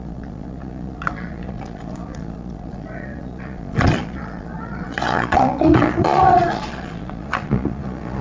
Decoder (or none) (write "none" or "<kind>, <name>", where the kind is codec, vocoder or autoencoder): vocoder, Vocos